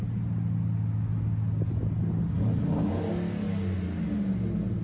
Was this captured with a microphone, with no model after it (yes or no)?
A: yes